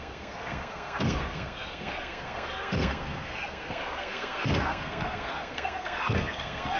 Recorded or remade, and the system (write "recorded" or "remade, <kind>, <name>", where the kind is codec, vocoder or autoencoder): remade, codec, SNAC